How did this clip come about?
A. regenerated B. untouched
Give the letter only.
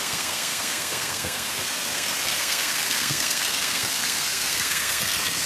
A